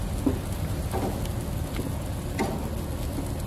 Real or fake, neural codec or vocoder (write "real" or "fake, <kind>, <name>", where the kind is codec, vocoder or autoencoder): real